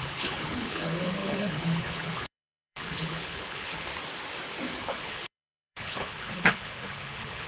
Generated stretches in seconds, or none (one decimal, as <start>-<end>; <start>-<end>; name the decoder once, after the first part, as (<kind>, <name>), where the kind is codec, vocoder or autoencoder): 0.0-3.9 (codec, HILCodec); 4.8-7.5